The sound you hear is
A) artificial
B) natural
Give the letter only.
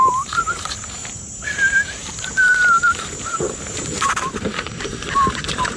A